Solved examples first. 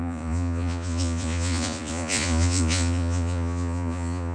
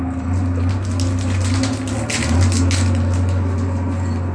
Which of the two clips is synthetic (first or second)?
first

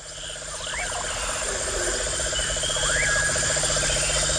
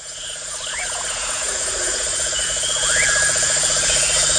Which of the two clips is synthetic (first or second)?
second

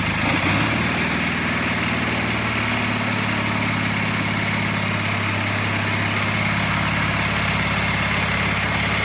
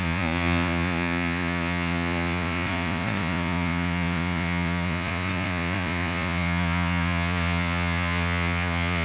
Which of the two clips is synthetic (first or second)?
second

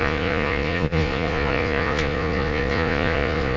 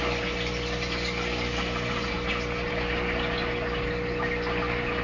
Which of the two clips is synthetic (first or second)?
first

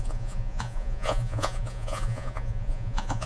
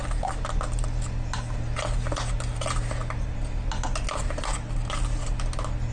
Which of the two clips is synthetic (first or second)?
first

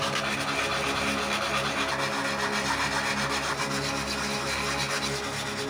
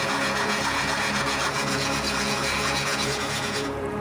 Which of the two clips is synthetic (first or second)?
second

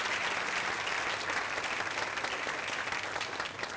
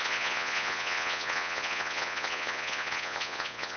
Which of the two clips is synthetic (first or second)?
second